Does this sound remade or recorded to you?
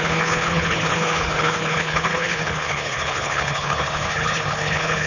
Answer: remade